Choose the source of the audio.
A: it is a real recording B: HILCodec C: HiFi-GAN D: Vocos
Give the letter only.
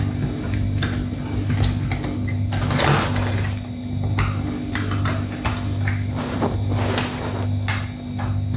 A